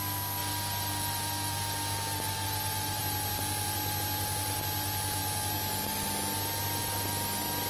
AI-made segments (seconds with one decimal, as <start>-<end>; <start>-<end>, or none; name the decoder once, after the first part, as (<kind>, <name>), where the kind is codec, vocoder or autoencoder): 0.4-3.0 (vocoder, BigVGAN v2)